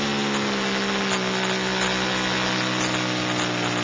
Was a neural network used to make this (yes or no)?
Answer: no